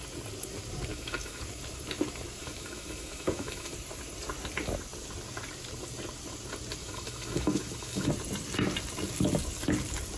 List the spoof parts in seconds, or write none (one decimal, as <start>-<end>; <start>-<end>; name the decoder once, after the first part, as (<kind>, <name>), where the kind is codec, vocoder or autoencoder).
0.9-1.4 (autoencoder, DAC-VAE); 2.4-3.7; 6.8-8.1